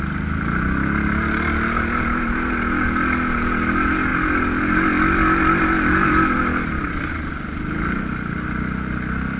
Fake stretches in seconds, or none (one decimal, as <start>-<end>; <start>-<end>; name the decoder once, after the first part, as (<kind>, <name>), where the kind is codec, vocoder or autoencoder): none